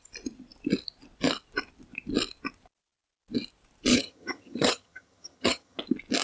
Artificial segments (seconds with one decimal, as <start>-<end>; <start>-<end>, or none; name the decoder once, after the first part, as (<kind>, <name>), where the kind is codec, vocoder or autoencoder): 3.9-5.8 (vocoder, HiFi-GAN)

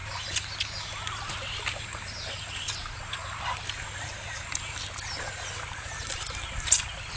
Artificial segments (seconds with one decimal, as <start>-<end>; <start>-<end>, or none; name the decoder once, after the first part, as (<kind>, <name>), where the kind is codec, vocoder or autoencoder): none